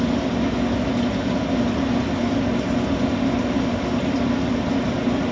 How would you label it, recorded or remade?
recorded